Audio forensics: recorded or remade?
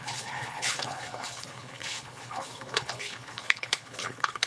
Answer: remade